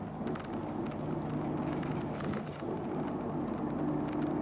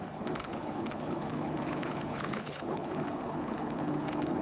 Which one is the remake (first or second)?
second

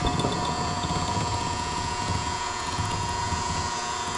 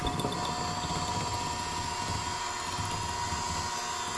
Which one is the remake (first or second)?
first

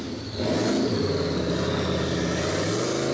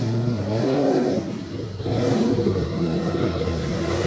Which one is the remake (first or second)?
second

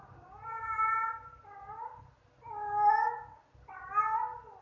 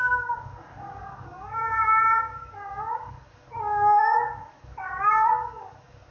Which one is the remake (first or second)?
second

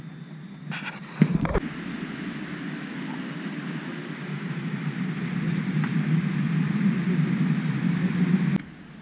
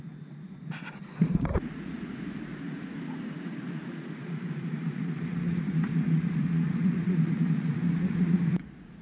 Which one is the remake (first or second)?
second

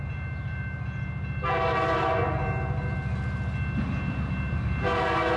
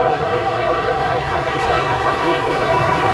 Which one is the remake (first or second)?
second